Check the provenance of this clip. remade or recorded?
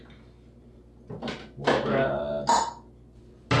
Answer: recorded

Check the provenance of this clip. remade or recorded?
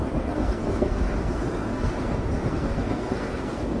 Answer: remade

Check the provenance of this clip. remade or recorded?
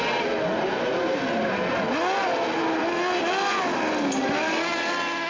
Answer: recorded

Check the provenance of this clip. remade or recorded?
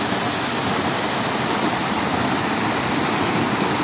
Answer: recorded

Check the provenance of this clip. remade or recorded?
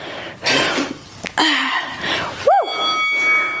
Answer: recorded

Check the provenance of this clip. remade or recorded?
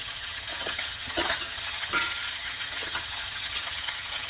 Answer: remade